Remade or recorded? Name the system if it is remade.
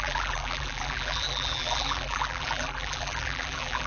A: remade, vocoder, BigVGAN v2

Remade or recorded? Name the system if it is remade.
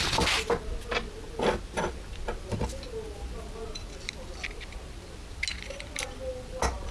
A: recorded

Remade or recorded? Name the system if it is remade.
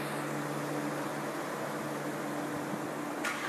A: recorded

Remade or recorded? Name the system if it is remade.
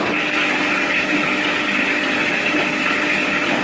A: recorded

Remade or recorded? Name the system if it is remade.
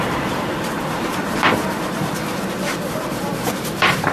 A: remade, vocoder, BigVGAN v2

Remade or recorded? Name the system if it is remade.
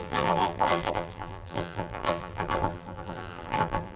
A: remade, vocoder, BigVGAN v2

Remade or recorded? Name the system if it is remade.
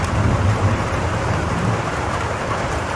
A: remade, vocoder, BigVGAN v2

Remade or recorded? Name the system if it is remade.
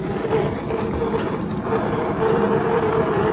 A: recorded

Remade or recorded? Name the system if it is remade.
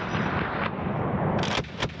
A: remade, vocoder, BigVGAN v2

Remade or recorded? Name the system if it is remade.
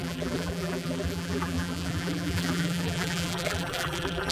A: remade, vocoder, BigVGAN v2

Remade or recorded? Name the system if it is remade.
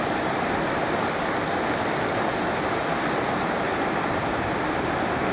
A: recorded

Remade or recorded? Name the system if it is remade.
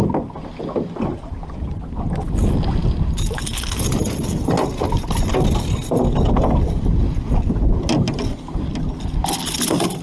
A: recorded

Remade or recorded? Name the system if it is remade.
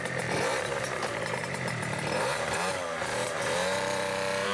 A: remade, vocoder, BigVGAN v2